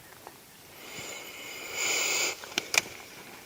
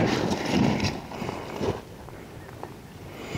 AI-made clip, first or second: first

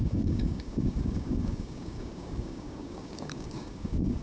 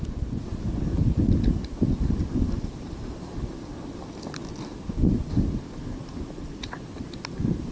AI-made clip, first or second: first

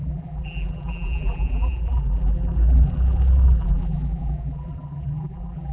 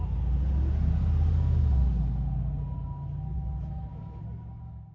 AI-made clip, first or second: first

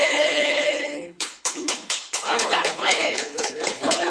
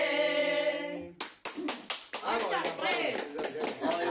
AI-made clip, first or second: first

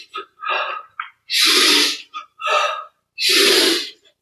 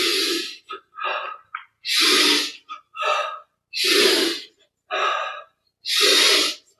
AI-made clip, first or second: first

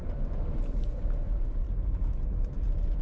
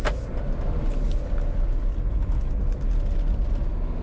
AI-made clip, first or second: first